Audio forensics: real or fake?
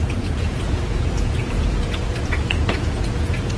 fake